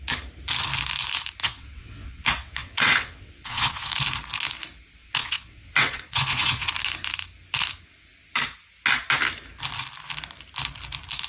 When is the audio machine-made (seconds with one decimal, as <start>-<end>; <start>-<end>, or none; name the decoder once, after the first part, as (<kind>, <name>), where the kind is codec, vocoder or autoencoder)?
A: 1.4-3.9 (vocoder, WaveNeXt); 5.0-6.7